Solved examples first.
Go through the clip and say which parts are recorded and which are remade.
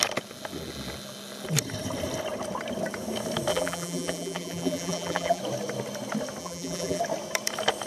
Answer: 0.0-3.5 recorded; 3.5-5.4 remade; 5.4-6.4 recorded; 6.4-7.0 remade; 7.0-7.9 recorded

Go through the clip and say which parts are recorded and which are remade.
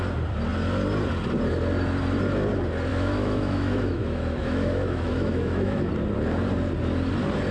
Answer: 0.0-2.9 recorded; 2.9-5.9 remade; 5.9-7.5 recorded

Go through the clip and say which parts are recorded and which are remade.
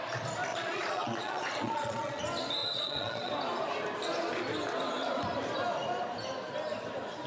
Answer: 0.0-0.5 recorded; 0.5-2.2 remade; 2.2-2.6 recorded; 2.6-3.3 remade; 3.3-7.3 recorded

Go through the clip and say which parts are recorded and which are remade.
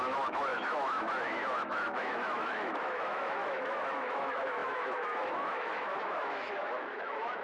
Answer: 0.0-7.4 remade